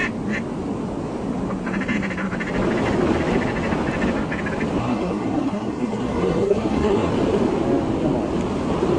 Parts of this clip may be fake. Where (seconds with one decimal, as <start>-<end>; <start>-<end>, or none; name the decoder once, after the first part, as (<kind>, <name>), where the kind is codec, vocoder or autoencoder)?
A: 4.8-7.1 (codec, SNAC)

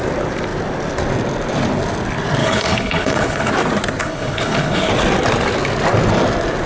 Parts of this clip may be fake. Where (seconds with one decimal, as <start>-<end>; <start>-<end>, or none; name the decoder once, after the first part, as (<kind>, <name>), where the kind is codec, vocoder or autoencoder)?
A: 2.4-3.5 (codec, HILCodec); 4.0-4.9

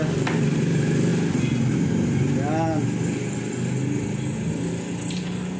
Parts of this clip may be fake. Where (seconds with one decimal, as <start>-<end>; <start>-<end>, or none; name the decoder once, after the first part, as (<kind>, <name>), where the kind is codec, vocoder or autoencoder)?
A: none